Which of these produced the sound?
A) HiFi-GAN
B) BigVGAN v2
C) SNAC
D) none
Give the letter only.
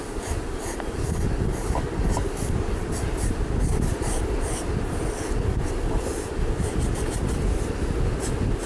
D